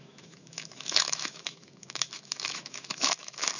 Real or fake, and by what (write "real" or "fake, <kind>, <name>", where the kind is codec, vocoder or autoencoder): fake, autoencoder, DAC-VAE